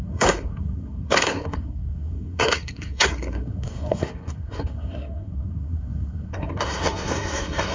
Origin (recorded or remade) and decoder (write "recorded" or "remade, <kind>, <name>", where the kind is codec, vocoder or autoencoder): remade, codec, SNAC